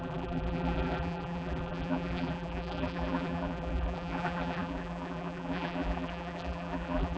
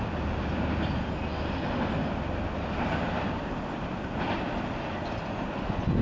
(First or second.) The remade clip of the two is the first